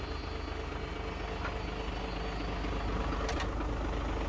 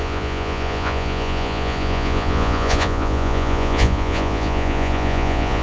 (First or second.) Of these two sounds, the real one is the first